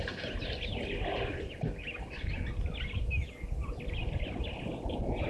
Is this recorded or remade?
recorded